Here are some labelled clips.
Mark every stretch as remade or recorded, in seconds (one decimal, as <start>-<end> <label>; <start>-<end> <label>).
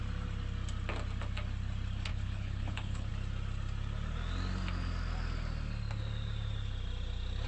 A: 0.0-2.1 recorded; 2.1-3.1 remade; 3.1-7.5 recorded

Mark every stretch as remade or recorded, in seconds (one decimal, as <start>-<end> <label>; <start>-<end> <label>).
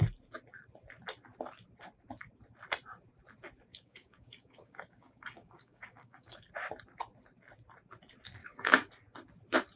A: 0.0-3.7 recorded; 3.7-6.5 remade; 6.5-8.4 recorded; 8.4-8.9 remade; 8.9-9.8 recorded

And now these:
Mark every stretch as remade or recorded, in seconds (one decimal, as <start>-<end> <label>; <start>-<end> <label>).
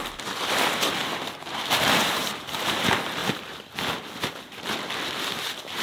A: 0.0-1.0 recorded; 1.0-2.8 remade; 2.8-5.8 recorded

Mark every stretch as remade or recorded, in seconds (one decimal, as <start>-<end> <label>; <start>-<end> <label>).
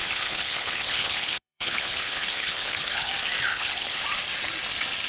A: 0.0-3.1 remade; 3.1-3.5 recorded; 3.5-4.0 remade; 4.0-5.1 recorded